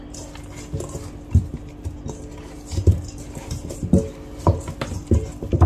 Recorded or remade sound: recorded